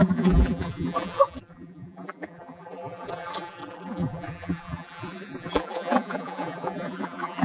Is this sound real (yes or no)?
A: no